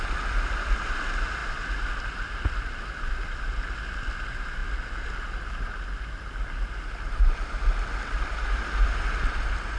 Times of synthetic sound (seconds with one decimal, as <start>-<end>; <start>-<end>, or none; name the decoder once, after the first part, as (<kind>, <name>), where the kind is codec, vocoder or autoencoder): none